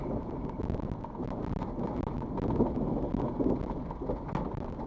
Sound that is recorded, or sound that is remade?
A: recorded